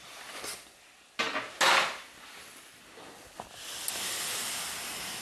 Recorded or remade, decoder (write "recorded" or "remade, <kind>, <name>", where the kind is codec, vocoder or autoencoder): recorded